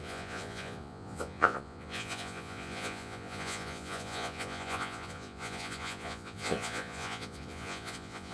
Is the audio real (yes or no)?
no